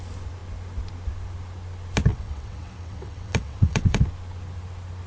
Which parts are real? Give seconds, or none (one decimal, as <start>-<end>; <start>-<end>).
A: 0.0-2.1; 4.0-5.1